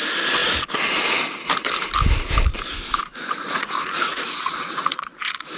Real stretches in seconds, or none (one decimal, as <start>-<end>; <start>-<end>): 0.0-3.4